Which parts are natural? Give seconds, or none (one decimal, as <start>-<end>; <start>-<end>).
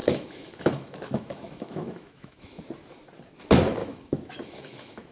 2.6-3.8